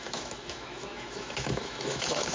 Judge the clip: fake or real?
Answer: fake